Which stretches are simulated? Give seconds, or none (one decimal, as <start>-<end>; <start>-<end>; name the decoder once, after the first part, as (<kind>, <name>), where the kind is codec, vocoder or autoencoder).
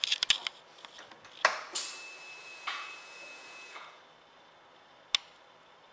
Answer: 2.4-4.0 (vocoder, Vocos)